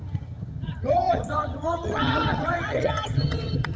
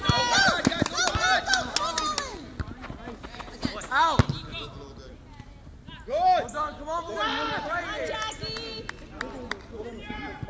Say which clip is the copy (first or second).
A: first